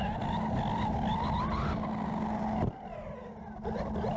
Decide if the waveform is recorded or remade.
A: recorded